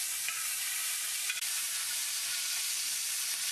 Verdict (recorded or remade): remade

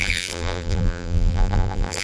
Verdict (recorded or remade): remade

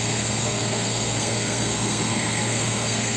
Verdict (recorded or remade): remade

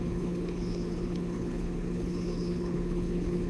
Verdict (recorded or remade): remade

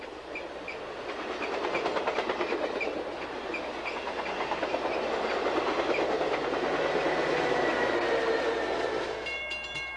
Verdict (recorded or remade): recorded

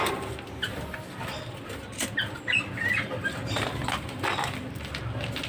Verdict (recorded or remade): recorded